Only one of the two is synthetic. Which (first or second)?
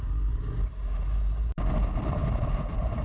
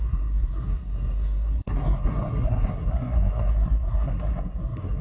second